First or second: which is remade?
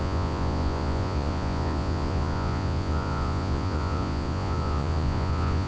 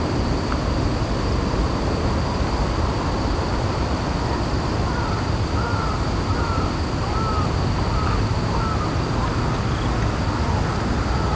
first